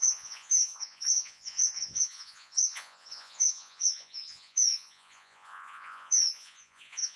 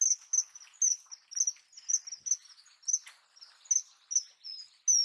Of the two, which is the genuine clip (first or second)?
second